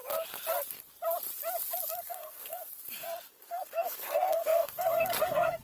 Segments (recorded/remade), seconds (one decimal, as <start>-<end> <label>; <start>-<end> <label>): 0.0-2.0 recorded; 2.0-2.7 remade; 2.7-3.5 recorded; 3.5-5.6 remade